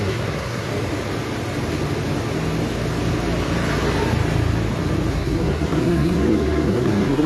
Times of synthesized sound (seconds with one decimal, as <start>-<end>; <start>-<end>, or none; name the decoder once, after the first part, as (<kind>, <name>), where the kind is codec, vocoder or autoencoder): 0.0-0.7 (codec, SNAC); 5.1-7.3